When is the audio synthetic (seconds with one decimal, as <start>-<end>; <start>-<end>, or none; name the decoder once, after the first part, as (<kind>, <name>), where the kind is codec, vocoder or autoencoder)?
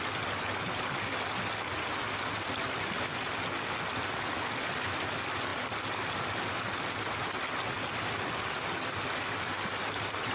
none